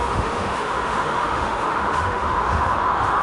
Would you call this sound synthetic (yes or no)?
yes